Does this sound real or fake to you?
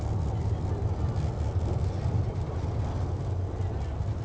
real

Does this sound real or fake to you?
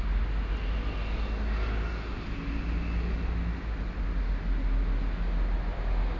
real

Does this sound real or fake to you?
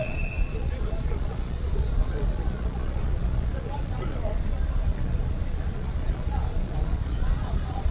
fake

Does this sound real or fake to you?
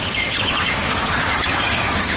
fake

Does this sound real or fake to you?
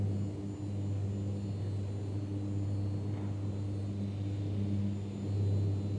real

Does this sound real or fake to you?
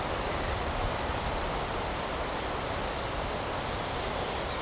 fake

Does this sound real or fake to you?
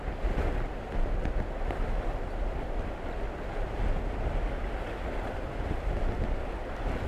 real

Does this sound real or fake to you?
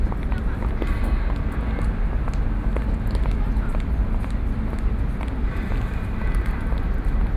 real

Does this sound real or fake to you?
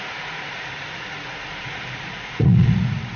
fake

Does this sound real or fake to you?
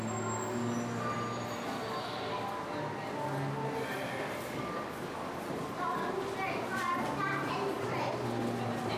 real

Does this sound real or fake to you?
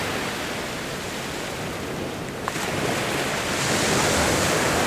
real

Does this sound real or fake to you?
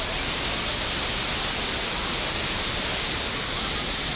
real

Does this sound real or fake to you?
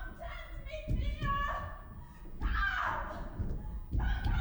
real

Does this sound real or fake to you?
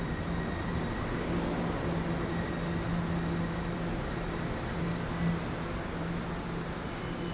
real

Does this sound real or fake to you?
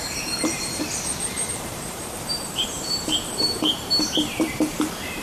fake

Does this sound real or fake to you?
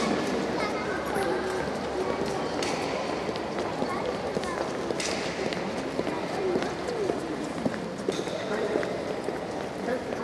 real